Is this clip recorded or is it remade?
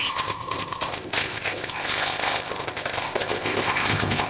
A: remade